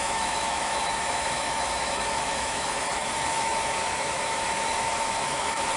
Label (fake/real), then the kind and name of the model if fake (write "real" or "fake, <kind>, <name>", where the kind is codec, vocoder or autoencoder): fake, autoencoder, DAC-VAE